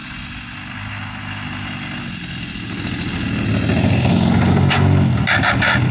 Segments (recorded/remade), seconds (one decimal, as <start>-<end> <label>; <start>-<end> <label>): 0.0-5.9 recorded